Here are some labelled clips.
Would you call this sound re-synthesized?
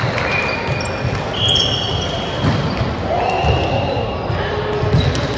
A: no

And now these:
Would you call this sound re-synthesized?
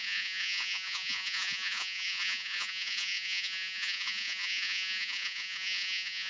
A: yes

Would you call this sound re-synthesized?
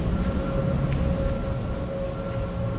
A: no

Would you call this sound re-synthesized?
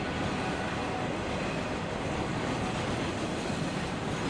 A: no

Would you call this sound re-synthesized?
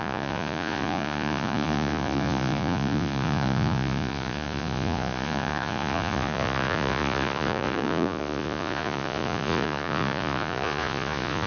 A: yes